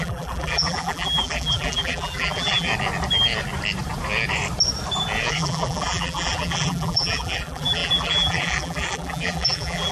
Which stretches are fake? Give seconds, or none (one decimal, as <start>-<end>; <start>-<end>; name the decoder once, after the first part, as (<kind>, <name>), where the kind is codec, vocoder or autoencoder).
0.0-2.7 (vocoder, BigVGAN v2); 5.3-9.9